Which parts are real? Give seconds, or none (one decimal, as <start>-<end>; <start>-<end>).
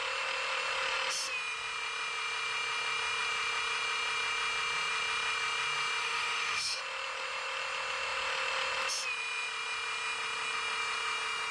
0.0-6.0; 6.8-11.5